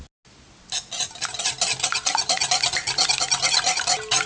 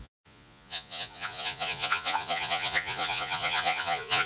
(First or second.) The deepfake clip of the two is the second